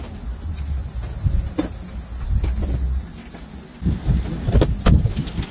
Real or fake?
real